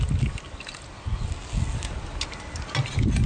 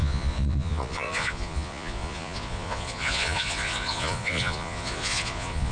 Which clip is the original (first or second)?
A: first